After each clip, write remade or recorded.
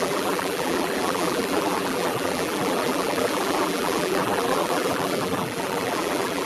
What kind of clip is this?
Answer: remade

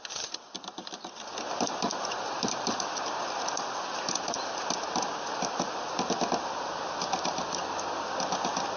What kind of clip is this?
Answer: recorded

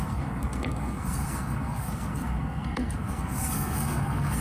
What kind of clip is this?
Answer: remade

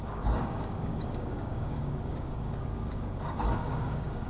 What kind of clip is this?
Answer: remade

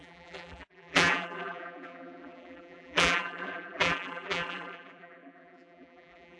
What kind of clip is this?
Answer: remade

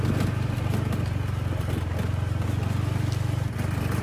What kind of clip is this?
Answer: recorded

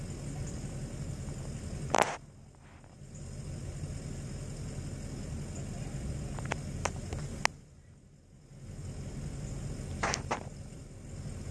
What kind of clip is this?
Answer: recorded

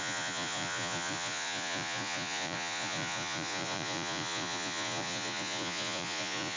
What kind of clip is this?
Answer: remade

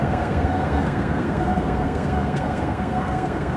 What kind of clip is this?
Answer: remade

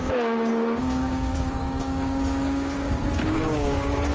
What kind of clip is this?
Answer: remade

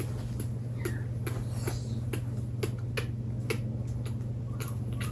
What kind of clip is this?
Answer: recorded